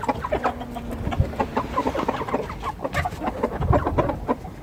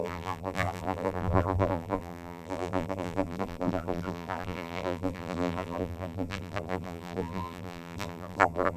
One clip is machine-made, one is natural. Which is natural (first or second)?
first